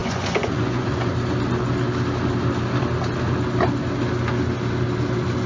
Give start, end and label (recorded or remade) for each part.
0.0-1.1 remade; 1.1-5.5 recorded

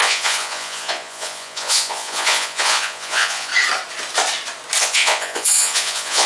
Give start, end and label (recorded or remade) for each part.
0.0-3.5 remade; 3.5-4.8 recorded; 4.8-6.3 remade

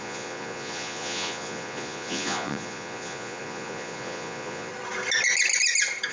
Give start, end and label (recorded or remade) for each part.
0.0-4.7 remade; 4.7-6.1 recorded

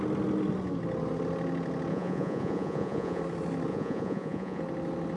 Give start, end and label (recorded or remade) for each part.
0.0-1.9 recorded; 1.9-3.2 remade; 3.2-3.7 recorded; 3.7-4.6 remade; 4.6-5.2 recorded

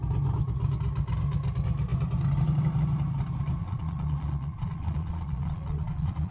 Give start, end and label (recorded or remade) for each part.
0.0-3.6 recorded; 3.6-6.3 remade

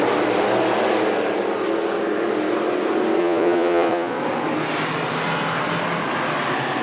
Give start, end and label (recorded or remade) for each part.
0.0-3.2 recorded; 3.2-4.2 remade; 4.2-6.8 recorded

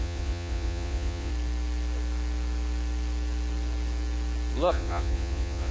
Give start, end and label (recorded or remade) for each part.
0.0-1.3 remade; 1.3-4.7 recorded; 4.7-5.7 remade